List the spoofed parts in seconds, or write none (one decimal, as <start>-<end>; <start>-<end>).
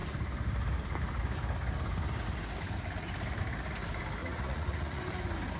4.2-5.0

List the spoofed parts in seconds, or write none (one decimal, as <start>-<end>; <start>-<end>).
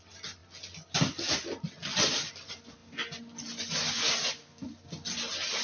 none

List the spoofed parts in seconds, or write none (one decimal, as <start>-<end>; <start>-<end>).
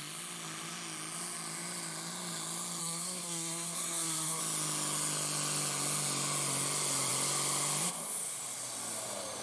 2.8-4.4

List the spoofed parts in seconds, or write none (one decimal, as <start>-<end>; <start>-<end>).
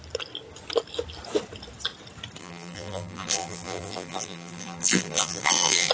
2.4-5.9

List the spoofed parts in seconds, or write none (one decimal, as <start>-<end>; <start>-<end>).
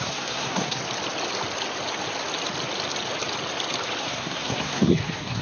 0.0-0.8; 4.0-5.4